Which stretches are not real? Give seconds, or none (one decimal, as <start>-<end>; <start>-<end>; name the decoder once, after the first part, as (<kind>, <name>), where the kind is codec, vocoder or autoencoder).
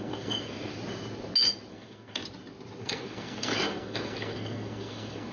0.0-0.7 (codec, SNAC); 1.7-2.2; 2.8-5.3